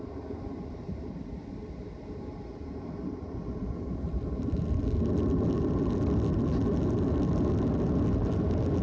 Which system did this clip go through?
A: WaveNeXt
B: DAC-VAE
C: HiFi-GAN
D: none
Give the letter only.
D